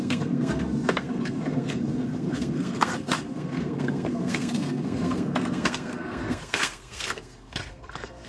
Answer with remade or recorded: remade